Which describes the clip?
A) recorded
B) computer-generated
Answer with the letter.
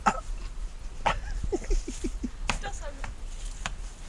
B